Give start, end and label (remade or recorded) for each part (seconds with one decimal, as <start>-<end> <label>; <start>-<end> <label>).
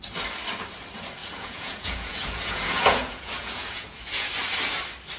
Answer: 0.0-1.2 recorded; 1.2-4.3 remade; 4.3-5.2 recorded